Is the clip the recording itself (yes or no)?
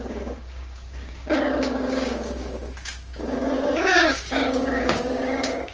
no